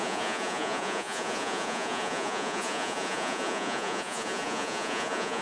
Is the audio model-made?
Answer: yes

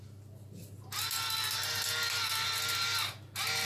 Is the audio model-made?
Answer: no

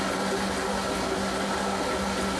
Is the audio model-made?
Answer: no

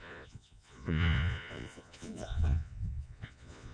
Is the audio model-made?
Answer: yes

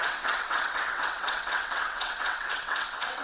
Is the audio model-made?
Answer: yes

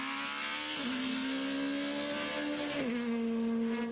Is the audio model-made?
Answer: no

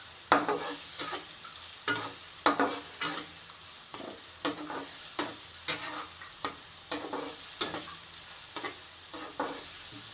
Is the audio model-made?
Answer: no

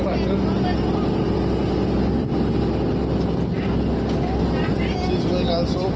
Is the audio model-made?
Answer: no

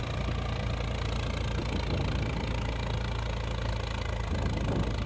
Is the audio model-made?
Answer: no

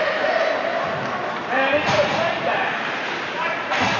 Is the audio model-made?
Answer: no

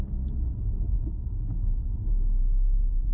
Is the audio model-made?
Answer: no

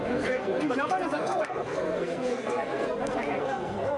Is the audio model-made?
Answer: yes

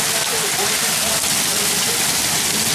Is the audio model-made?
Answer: no